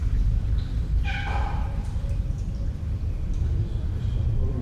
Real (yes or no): no